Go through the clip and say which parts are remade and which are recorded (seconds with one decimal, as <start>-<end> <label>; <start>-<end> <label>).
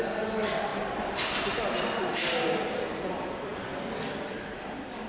0.0-5.1 recorded